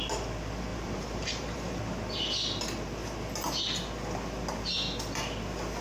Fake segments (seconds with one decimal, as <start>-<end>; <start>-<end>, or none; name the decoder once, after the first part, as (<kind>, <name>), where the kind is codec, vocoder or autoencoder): 0.7-1.8 (vocoder, BigVGAN v2)